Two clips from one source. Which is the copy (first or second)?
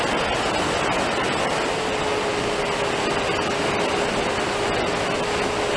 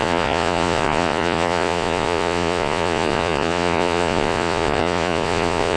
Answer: second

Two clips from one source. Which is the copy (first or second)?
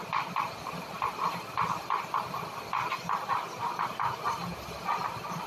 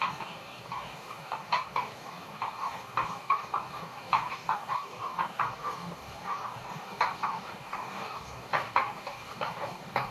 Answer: second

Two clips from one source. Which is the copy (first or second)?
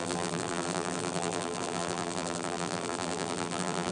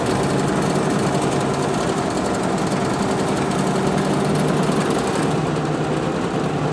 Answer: first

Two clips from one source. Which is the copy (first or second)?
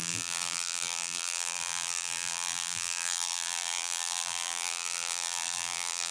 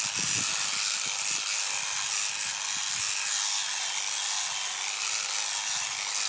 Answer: first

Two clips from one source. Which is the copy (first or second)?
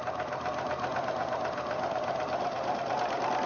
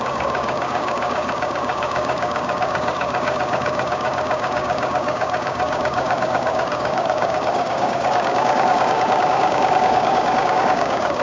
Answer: second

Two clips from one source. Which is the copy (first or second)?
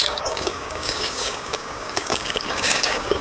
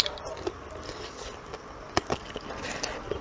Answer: first